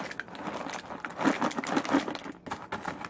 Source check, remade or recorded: recorded